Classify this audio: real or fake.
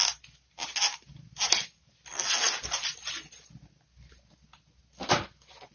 real